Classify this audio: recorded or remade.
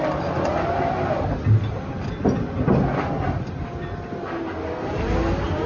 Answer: recorded